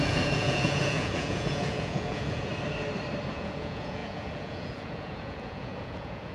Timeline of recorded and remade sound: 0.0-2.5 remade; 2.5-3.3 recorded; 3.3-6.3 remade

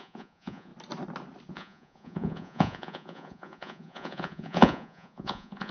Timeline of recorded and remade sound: 0.0-0.7 remade; 0.7-1.5 recorded; 1.5-5.7 remade

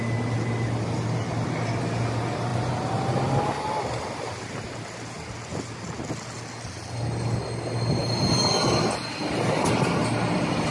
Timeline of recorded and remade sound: 0.0-10.7 recorded

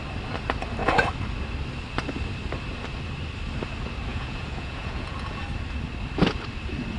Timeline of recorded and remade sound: 0.0-4.1 recorded; 4.1-5.4 remade; 5.4-7.0 recorded

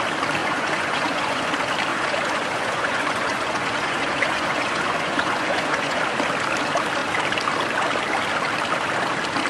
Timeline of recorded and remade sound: 0.0-0.4 recorded; 0.4-1.5 remade; 1.5-1.9 recorded; 1.9-6.0 remade; 6.0-9.5 recorded

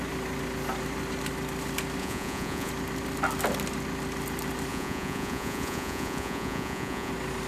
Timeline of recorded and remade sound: 0.0-2.0 recorded; 2.0-2.7 remade; 2.7-4.7 recorded; 4.7-7.1 remade; 7.1-7.5 recorded

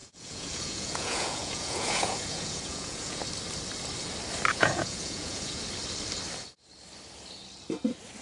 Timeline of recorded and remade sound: 0.0-3.2 remade; 3.2-4.5 recorded; 4.5-5.6 remade; 5.6-8.2 recorded